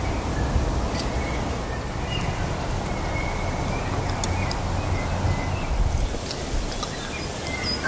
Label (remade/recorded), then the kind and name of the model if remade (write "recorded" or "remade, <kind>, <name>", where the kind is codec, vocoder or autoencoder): recorded